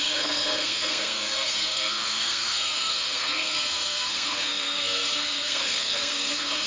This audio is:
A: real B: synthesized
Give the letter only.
B